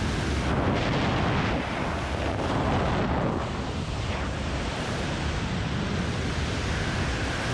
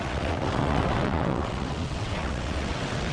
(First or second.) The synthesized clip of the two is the second